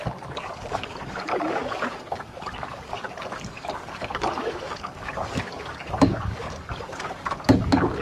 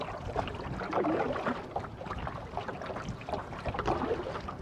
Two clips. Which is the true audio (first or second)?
second